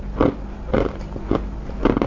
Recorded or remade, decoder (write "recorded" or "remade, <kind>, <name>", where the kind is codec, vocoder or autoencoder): recorded